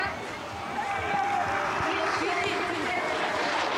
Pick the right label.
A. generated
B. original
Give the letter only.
B